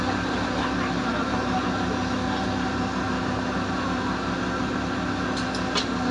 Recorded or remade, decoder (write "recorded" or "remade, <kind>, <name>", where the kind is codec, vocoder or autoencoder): recorded